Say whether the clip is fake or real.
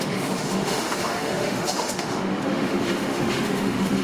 fake